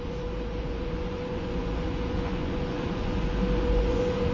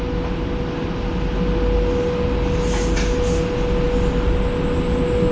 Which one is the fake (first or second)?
first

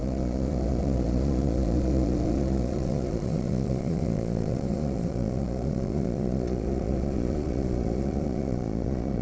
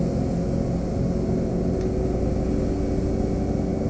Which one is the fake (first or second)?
first